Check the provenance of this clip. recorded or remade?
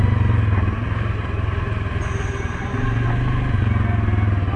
recorded